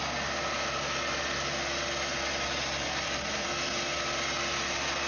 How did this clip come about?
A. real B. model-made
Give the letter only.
A